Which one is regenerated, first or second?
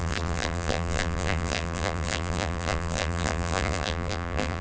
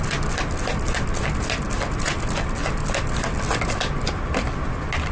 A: first